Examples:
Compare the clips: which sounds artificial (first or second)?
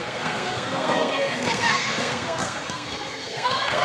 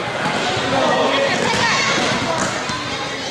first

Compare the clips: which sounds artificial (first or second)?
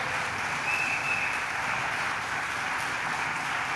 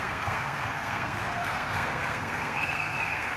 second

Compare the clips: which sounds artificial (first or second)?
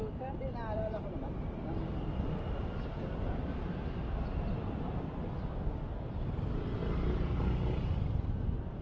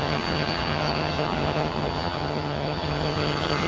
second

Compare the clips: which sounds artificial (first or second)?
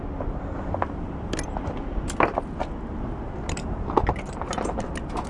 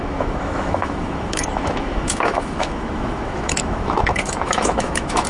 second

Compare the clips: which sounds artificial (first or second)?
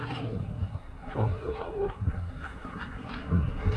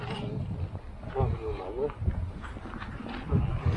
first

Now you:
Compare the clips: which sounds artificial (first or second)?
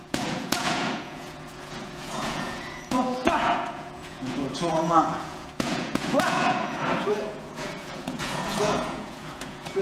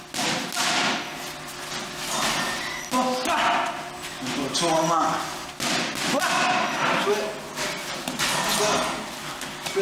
first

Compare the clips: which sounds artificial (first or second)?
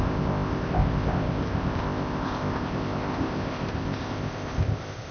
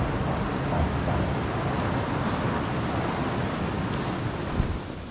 first